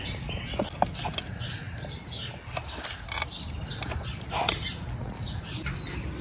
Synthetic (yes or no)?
no